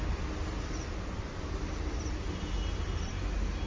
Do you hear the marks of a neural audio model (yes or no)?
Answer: no